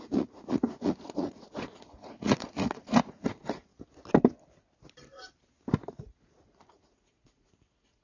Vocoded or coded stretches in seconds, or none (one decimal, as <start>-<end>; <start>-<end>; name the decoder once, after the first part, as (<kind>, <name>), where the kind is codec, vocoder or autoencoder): 0.0-3.7 (vocoder, Vocos); 6.0-8.0